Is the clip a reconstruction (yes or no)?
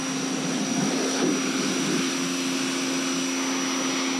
no